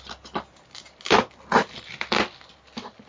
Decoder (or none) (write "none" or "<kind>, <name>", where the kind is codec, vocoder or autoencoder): none